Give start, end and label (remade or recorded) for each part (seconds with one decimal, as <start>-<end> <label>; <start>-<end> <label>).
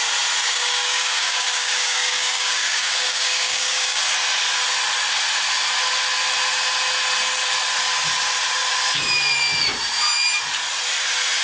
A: 0.0-0.4 recorded; 0.4-4.0 remade; 4.0-11.4 recorded